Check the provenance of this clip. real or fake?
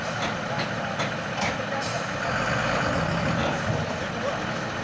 real